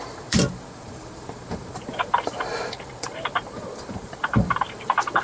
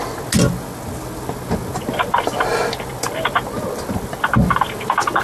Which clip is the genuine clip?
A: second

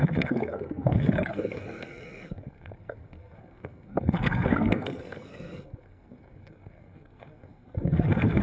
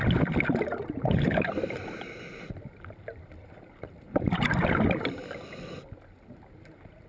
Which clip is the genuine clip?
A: second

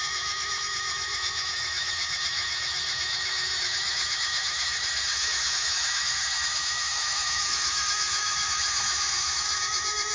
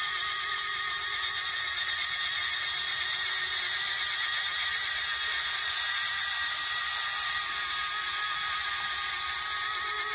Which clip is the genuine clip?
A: second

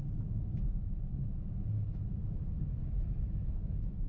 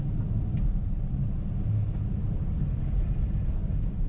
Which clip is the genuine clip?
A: second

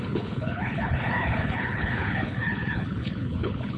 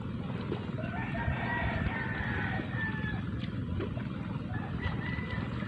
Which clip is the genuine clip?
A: second